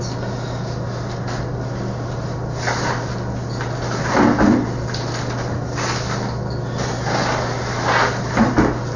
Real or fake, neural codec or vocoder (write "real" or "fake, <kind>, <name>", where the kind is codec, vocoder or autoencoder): real